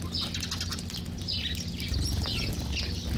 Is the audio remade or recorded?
recorded